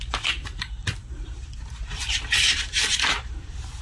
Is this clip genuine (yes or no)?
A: no